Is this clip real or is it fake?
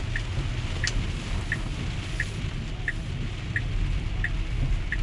real